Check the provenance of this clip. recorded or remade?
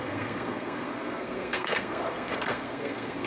remade